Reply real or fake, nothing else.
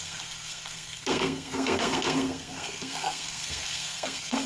fake